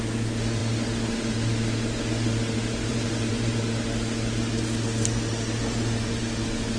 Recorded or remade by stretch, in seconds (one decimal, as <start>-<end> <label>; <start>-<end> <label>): 0.0-2.9 recorded; 2.9-3.6 remade; 3.6-6.8 recorded